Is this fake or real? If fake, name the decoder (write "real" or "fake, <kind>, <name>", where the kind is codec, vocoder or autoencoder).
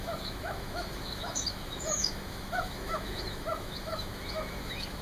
fake, autoencoder, DAC-VAE